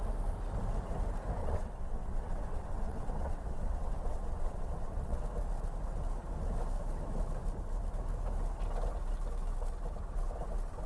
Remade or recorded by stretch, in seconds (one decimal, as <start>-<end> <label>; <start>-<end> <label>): 0.0-1.4 recorded; 1.4-5.2 remade; 5.2-10.9 recorded